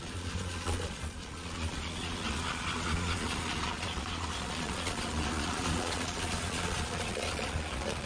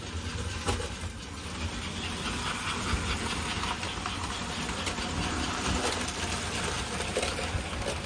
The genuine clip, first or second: second